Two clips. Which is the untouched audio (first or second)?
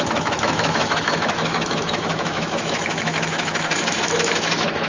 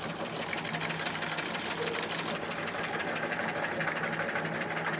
second